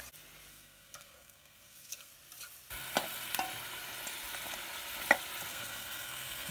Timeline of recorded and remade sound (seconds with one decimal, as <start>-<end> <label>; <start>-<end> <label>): 0.0-0.5 recorded; 0.5-2.1 remade; 2.1-5.5 recorded; 5.5-6.5 remade